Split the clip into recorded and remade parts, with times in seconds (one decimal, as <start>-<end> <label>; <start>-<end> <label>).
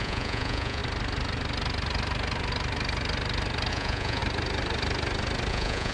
0.0-0.8 remade; 0.8-3.7 recorded; 3.7-4.2 remade; 4.2-5.5 recorded; 5.5-5.9 remade